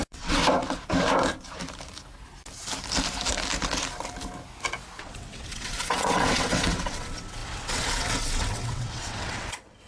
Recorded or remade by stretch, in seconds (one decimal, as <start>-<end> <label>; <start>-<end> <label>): 0.0-0.4 remade; 0.4-5.0 recorded; 5.0-9.9 remade